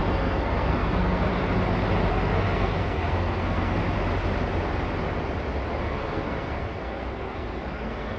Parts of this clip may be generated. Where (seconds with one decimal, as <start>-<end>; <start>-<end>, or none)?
0.0-1.3; 2.1-3.8; 5.8-8.2